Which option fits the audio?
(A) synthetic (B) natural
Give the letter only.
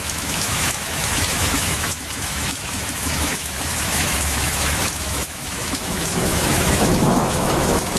A